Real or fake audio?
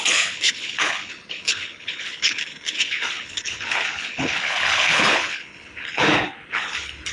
fake